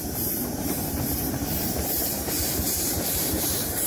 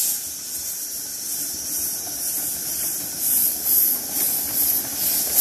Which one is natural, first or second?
second